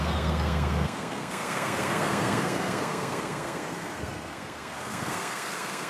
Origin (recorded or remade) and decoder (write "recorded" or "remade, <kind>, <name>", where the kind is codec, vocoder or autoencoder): remade, codec, SNAC